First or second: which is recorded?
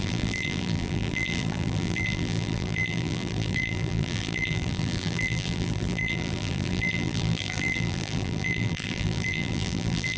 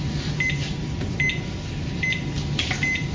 second